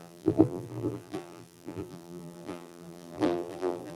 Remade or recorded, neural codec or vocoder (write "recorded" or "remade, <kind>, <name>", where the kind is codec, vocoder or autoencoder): remade, vocoder, BigVGAN v2